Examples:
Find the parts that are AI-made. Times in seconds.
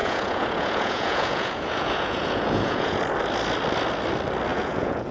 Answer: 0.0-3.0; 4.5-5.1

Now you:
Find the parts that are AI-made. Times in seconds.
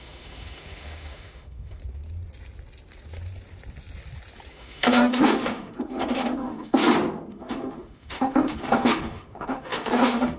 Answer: 0.0-1.8; 4.5-6.8; 7.3-10.4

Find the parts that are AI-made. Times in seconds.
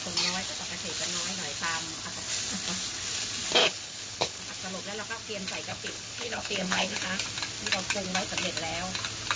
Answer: 3.6-4.4; 5.7-7.0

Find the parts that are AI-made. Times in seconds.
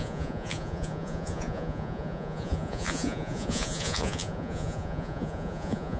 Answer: 0.0-6.0